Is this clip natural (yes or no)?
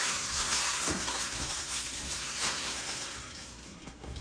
no